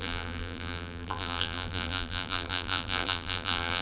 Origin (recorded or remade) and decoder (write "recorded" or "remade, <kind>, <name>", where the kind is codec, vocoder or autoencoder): remade, vocoder, BigVGAN v2